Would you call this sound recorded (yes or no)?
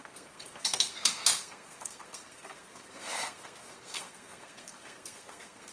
no